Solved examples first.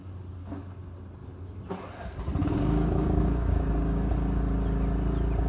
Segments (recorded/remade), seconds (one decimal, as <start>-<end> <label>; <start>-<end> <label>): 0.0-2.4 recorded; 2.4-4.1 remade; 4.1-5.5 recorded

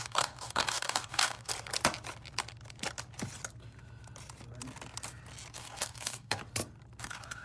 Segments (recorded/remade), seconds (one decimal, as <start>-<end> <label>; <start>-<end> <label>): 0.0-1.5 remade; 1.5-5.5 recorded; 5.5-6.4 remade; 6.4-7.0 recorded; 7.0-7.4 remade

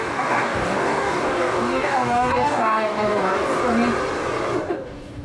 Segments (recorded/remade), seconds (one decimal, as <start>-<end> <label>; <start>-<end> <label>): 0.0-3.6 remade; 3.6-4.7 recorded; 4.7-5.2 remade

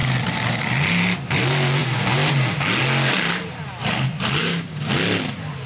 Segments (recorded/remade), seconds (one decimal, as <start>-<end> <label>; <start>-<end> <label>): 0.0-4.4 recorded; 4.4-4.9 remade; 4.9-5.7 recorded

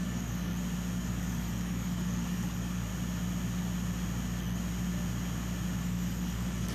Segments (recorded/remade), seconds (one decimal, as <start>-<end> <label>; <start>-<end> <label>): 0.0-0.5 remade; 0.5-1.0 recorded; 1.0-2.9 remade; 2.9-5.8 recorded; 5.8-6.7 remade

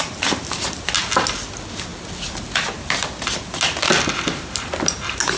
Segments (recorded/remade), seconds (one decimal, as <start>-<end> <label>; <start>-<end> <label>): 0.0-5.4 recorded